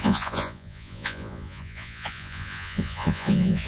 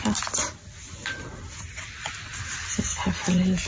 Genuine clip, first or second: second